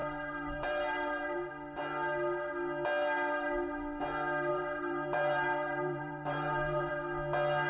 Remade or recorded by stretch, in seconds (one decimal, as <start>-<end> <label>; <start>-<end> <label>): 0.0-1.5 remade; 1.5-4.5 recorded; 4.5-6.9 remade; 6.9-7.7 recorded